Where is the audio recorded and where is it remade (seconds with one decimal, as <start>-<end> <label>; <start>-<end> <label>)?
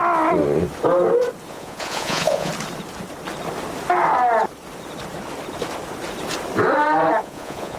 0.0-1.5 recorded; 1.5-2.5 remade; 2.5-7.2 recorded; 7.2-7.8 remade